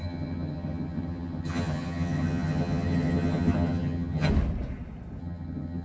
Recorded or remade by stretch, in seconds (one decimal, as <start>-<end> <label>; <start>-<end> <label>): 0.0-4.3 remade; 4.3-5.2 recorded; 5.2-5.8 remade